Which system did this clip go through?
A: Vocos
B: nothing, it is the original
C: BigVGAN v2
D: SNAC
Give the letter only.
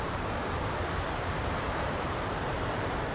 C